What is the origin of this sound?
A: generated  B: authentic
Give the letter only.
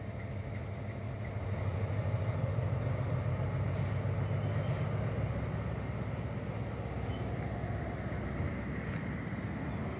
B